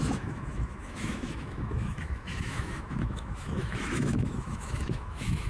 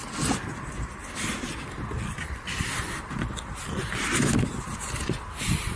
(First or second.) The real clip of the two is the second